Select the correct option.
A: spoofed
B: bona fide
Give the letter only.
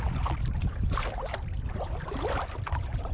B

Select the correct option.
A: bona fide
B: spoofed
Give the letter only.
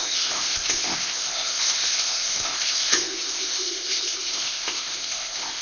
B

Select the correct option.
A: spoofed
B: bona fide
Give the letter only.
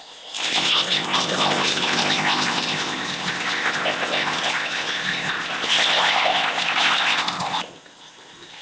A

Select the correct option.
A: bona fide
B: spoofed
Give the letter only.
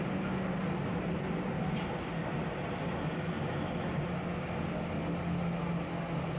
A